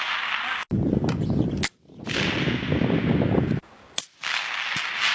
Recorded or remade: recorded